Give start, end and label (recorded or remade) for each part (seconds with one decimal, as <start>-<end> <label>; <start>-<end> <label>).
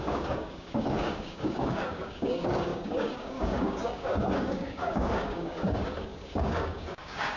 0.0-7.4 remade